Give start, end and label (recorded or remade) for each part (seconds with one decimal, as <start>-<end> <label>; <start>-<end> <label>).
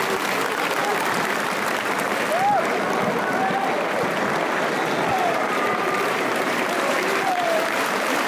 0.0-5.1 recorded; 5.1-8.3 remade